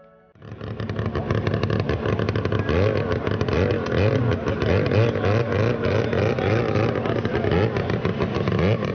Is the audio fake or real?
real